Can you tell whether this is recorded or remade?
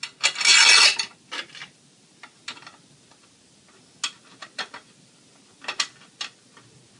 recorded